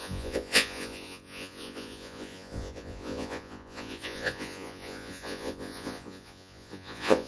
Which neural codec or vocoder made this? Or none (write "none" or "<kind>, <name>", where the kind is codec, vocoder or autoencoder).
vocoder, Vocos